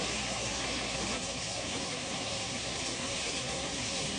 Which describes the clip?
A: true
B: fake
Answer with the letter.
B